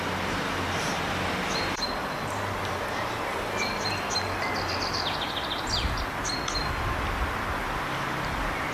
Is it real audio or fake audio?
real